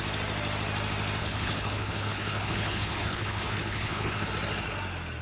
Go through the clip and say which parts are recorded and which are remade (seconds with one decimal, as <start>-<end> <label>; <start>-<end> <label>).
0.0-1.2 recorded; 1.2-4.3 remade; 4.3-5.2 recorded